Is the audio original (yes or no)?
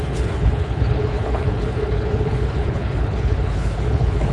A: no